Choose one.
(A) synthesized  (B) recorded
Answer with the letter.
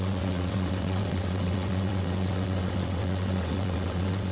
A